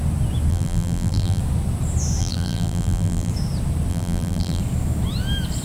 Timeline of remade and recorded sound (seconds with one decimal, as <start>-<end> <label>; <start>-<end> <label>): 0.0-0.5 recorded; 0.5-1.4 remade; 1.4-2.2 recorded; 2.2-3.3 remade; 3.3-3.9 recorded; 3.9-4.6 remade; 4.6-5.6 recorded